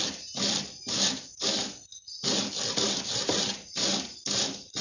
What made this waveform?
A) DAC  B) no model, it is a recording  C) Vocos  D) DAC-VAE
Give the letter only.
B